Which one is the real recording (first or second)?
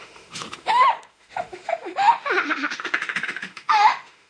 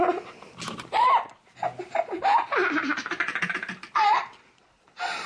second